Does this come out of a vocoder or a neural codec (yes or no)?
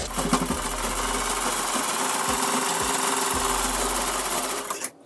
no